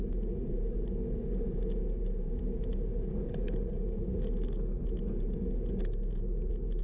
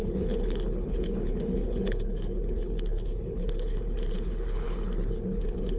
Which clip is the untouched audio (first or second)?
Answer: first